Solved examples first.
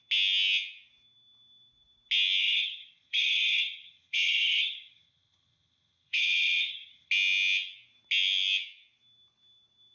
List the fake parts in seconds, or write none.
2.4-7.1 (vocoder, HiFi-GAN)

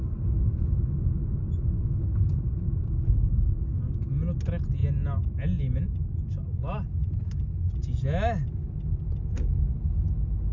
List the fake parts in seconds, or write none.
none

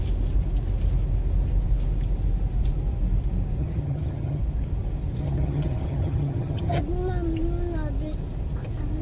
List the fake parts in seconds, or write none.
3.6-4.4 (vocoder, HiFi-GAN); 5.2-6.8

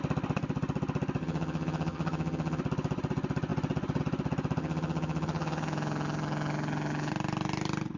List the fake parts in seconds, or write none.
1.2-2.6 (vocoder, HiFi-GAN); 4.6-7.1

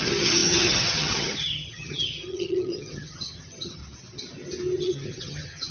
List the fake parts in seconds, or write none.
0.0-3.8 (vocoder, HiFi-GAN); 4.8-5.7

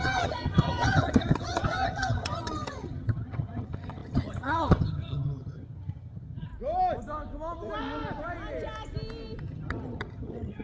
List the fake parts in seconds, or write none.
0.0-6.5 (vocoder, HiFi-GAN); 9.4-10.6

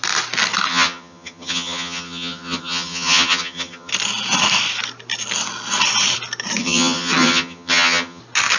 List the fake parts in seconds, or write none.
0.7-3.9 (vocoder, HiFi-GAN); 6.6-8.2